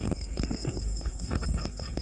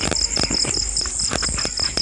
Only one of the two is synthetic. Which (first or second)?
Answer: first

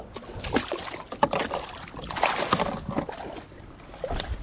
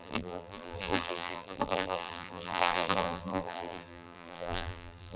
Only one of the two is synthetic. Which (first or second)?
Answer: second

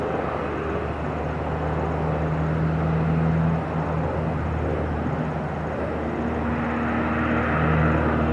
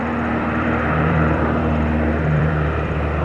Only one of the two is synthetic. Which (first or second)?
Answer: second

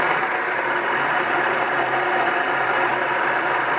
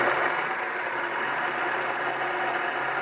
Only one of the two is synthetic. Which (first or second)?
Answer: first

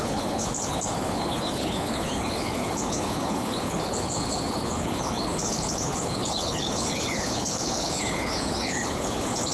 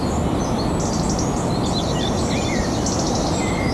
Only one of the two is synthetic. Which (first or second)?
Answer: first